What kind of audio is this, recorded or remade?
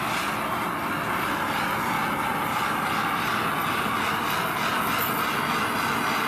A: recorded